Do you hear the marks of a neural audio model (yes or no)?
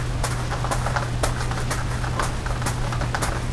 no